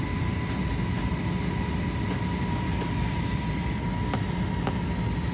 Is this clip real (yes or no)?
yes